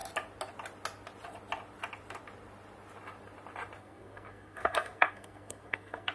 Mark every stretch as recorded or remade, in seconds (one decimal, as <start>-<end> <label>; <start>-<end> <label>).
0.0-3.8 recorded; 3.8-6.1 remade